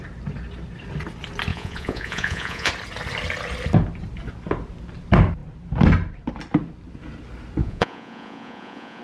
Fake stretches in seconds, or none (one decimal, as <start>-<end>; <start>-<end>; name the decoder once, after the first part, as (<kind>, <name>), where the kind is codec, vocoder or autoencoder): 1.5-2.7 (vocoder, Vocos); 7.6-9.0